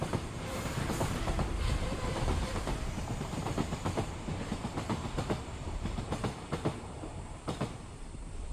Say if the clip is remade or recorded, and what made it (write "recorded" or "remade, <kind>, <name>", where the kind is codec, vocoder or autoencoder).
remade, vocoder, BigVGAN v2